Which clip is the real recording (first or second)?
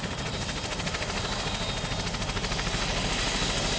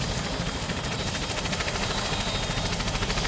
first